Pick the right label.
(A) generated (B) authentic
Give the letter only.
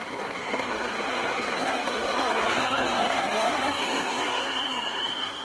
A